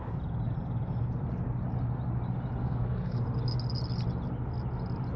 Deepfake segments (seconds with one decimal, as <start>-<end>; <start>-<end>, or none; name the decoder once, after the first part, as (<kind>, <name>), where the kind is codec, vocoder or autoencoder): 2.6-3.2 (codec, SNAC)